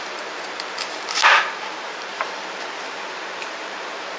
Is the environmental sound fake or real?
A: fake